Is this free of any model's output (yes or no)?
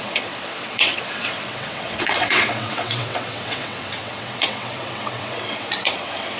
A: no